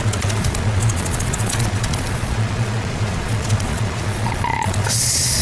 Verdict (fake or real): fake